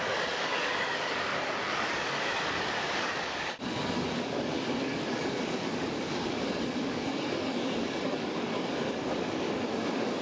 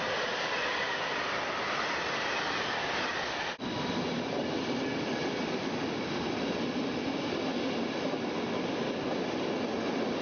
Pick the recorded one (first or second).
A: second